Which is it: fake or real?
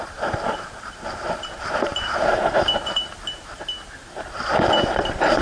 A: fake